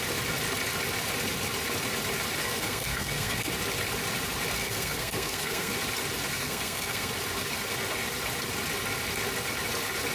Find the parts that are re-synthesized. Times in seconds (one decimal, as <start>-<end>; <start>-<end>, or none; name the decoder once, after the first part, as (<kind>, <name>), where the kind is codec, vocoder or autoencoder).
2.4-3.5 (codec, SNAC); 4.6-5.7; 6.3-7.1